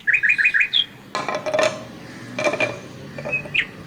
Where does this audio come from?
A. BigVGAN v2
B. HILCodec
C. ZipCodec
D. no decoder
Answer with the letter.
D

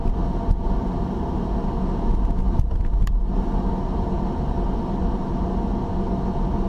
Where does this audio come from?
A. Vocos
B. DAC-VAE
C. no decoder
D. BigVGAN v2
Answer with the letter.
C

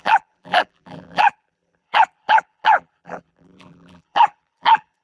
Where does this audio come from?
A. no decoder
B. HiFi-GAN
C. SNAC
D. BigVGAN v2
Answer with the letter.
D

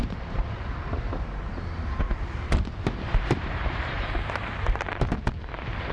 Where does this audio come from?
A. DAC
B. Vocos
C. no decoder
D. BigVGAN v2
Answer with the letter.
D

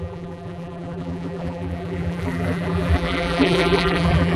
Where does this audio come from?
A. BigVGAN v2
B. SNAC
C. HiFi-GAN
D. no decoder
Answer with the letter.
A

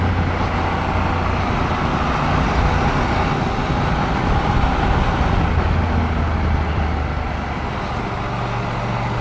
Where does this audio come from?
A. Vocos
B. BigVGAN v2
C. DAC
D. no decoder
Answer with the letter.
D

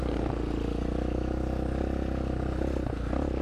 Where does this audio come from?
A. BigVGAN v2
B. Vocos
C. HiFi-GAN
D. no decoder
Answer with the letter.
D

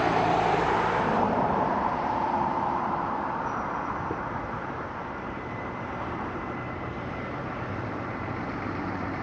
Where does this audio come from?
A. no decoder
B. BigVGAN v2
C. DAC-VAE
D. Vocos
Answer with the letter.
B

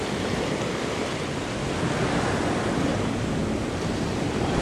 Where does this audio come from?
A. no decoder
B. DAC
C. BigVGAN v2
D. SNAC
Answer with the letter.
A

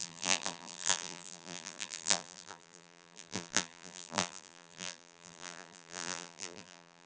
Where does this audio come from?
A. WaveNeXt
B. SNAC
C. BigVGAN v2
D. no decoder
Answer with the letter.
C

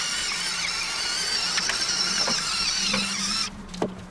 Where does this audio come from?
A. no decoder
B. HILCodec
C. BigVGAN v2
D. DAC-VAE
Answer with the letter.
A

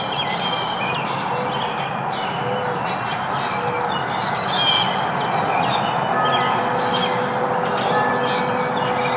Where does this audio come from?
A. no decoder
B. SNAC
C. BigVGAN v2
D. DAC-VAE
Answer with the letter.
A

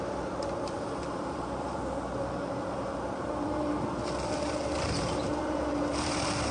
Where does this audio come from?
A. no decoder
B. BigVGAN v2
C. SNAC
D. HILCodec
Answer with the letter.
B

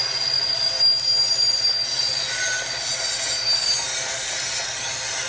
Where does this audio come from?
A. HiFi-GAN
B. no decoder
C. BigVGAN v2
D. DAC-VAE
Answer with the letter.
B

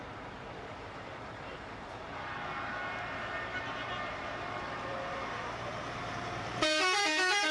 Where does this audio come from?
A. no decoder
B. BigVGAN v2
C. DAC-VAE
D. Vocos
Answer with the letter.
B